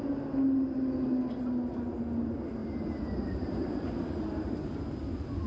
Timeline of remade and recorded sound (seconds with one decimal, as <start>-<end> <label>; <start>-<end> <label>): 0.0-2.6 recorded; 2.6-4.8 remade; 4.8-5.5 recorded